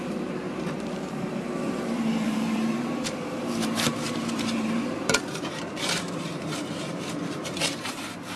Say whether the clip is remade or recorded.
remade